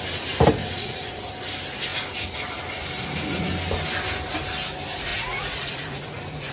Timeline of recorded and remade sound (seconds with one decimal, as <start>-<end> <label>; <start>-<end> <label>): 0.0-0.6 recorded; 0.6-1.3 remade; 1.3-5.1 recorded; 5.1-6.5 remade

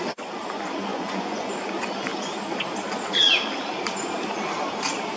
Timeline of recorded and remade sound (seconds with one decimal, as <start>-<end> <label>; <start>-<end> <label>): 0.0-0.9 recorded; 0.9-1.5 remade; 1.5-5.2 recorded

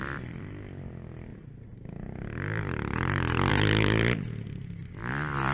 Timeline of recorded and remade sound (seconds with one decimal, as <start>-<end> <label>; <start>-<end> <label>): 0.0-5.5 recorded

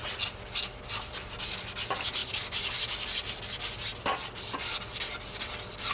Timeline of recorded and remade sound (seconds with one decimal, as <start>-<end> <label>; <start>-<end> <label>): 0.0-5.9 recorded

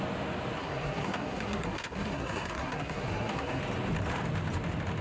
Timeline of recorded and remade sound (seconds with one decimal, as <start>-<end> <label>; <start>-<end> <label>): 0.0-0.6 recorded; 0.6-3.6 remade; 3.6-5.0 recorded

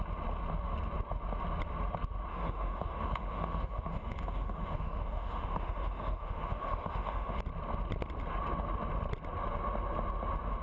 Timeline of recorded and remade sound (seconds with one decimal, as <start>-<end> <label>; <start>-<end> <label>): 0.0-2.3 recorded; 2.3-7.4 remade; 7.4-10.6 recorded